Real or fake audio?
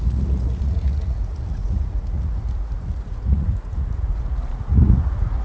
fake